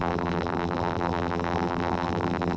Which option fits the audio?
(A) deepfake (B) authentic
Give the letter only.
A